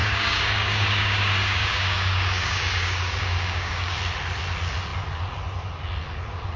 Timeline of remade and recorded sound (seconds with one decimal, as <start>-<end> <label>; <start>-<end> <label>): 0.0-4.0 remade; 4.0-6.6 recorded